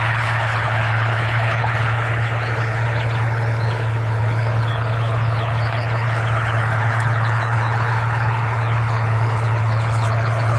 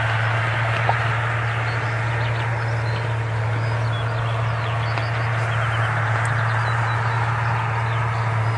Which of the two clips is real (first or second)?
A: second